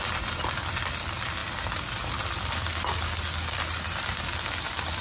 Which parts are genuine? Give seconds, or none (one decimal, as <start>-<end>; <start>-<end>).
0.0-5.0